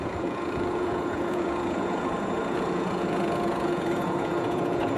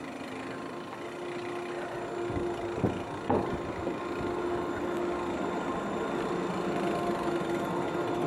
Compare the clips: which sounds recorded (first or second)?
second